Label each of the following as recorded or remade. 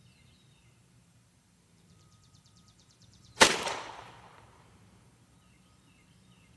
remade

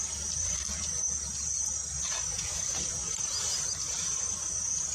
recorded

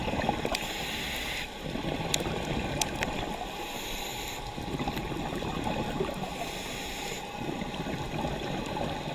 remade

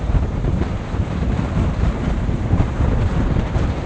remade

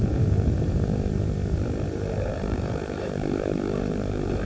remade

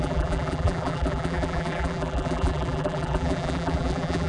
remade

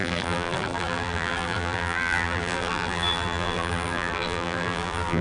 remade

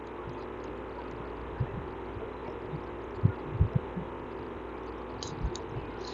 recorded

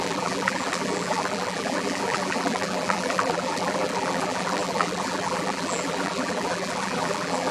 remade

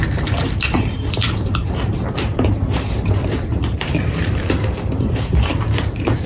remade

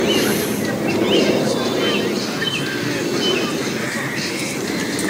recorded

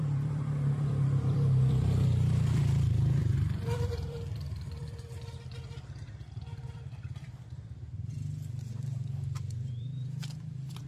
remade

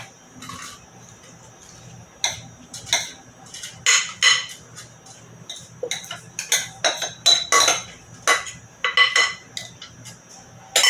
recorded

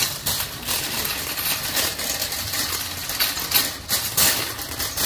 recorded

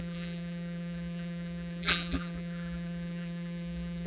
remade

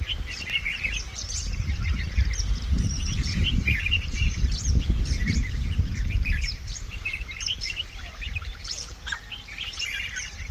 remade